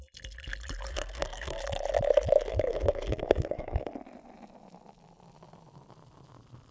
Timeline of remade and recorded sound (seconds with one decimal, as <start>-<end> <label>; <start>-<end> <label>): 0.0-0.9 recorded; 0.9-1.6 remade; 1.6-2.5 recorded; 2.5-3.9 remade; 3.9-6.7 recorded

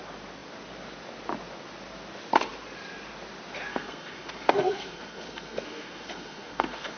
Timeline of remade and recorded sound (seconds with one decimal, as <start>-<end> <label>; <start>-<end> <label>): 0.0-3.7 recorded; 3.7-7.0 remade

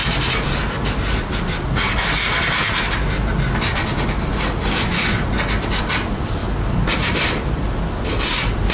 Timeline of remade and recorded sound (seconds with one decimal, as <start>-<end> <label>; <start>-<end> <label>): 0.0-8.7 recorded

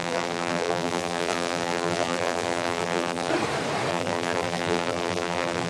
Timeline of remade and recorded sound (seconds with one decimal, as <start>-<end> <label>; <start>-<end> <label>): 0.0-3.3 remade; 3.3-3.9 recorded; 3.9-5.7 remade